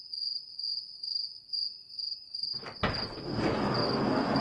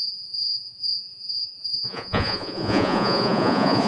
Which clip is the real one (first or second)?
first